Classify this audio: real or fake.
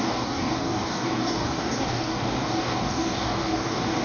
fake